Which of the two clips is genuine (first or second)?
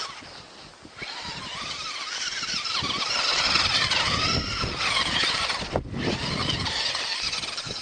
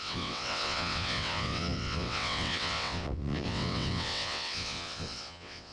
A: first